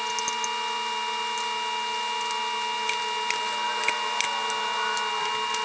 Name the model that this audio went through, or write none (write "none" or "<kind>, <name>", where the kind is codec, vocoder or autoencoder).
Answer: none